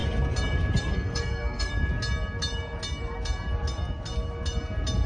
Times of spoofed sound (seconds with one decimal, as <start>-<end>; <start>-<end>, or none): 0.9-1.7